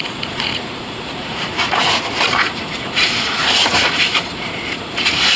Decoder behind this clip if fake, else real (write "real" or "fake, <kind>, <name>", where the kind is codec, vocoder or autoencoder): fake, vocoder, Vocos